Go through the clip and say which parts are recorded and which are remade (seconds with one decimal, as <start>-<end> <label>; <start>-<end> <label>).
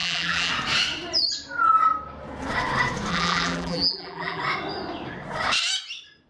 0.0-0.5 remade; 0.5-3.1 recorded; 3.1-4.4 remade; 4.4-6.3 recorded